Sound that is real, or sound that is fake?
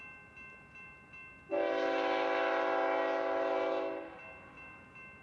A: real